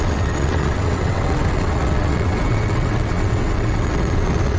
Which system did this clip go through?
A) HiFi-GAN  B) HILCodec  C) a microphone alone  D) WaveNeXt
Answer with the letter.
D